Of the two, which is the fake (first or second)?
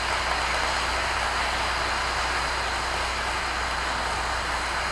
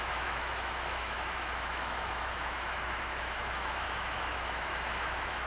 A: second